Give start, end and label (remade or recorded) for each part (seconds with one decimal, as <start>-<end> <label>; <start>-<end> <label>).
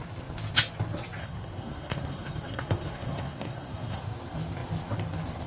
0.0-1.2 recorded; 1.2-4.0 remade; 4.0-5.5 recorded